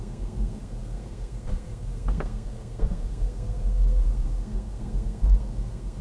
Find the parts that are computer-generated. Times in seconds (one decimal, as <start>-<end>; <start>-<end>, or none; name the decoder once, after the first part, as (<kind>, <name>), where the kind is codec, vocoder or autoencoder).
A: 0.0-6.0 (codec, SNAC)